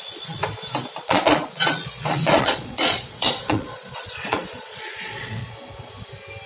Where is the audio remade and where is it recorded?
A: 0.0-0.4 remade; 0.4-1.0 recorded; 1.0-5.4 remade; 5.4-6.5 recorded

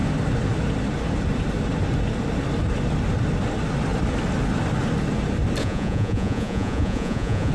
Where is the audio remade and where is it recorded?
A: 0.0-5.6 recorded; 5.6-7.5 remade